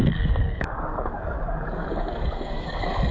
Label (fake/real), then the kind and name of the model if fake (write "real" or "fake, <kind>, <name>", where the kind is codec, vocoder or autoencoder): fake, codec, DAC